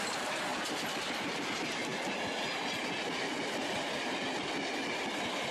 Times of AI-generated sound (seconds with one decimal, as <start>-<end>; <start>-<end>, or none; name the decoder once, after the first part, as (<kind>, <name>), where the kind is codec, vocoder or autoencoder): none